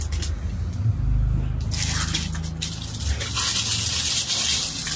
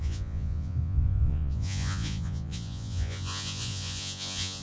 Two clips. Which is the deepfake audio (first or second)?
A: second